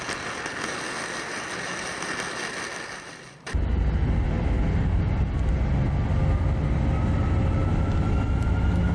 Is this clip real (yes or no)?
yes